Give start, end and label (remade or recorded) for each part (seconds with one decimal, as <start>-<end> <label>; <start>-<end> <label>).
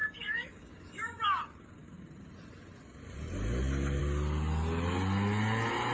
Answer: 0.0-1.4 remade; 1.4-5.9 recorded